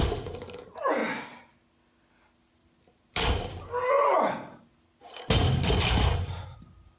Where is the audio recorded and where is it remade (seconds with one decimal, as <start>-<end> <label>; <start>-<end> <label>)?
0.0-7.0 recorded